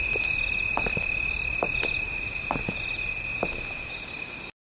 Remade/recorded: recorded